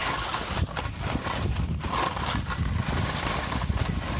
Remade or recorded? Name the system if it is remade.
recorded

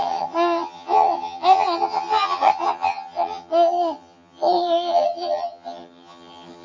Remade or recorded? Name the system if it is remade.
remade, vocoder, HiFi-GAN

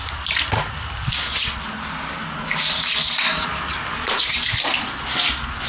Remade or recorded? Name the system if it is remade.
recorded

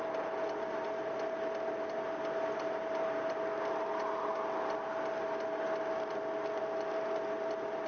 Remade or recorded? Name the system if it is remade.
recorded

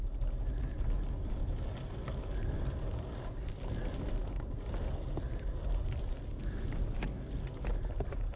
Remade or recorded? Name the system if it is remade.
recorded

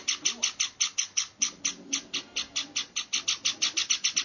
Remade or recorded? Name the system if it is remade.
recorded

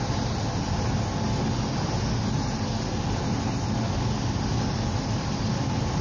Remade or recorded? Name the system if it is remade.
recorded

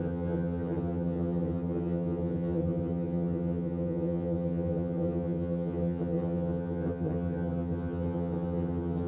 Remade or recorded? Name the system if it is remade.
remade, vocoder, HiFi-GAN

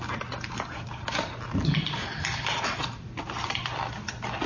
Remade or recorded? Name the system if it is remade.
recorded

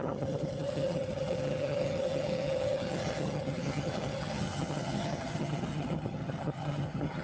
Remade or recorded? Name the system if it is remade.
remade, vocoder, HiFi-GAN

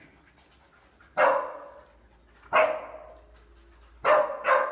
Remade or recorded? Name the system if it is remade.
recorded